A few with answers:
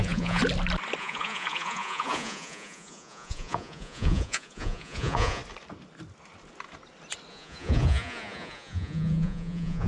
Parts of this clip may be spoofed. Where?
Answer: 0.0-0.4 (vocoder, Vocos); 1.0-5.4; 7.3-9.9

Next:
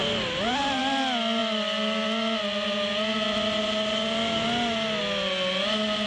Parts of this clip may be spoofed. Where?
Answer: none